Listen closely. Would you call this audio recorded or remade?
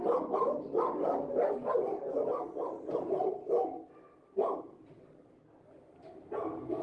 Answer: recorded